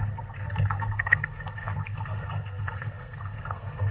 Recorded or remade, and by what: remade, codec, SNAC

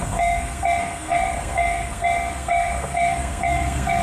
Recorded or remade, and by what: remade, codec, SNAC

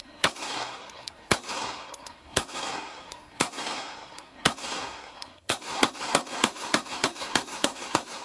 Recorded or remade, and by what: remade, codec, SNAC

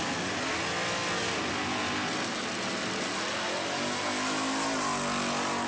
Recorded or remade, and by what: recorded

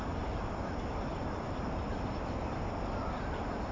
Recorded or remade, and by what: recorded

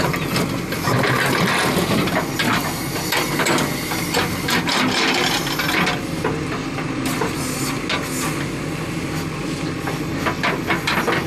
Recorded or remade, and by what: recorded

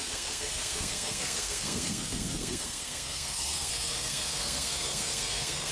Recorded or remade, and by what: remade, codec, SNAC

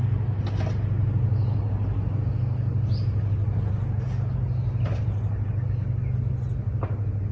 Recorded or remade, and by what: recorded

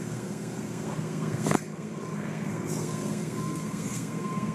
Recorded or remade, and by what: remade, codec, SNAC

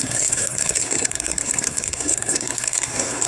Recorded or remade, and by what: remade, codec, SNAC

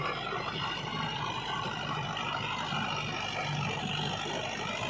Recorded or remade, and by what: recorded